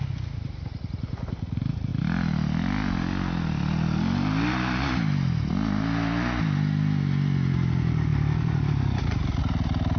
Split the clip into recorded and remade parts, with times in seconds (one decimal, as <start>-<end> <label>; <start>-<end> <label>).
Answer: 0.0-8.1 recorded; 8.1-9.4 remade; 9.4-10.0 recorded